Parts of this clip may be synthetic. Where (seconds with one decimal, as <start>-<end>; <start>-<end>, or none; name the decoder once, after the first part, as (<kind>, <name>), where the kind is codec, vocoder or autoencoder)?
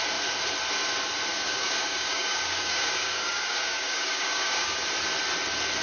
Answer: 1.3-4.8 (codec, DAC)